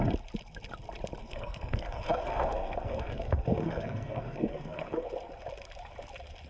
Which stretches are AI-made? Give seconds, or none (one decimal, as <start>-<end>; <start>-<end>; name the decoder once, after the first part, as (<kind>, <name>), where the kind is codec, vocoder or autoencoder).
1.2-5.1 (codec, SNAC)